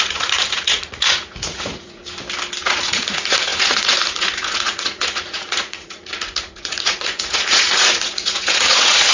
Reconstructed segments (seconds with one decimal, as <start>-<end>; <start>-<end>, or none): 0.0-2.0; 2.6-9.1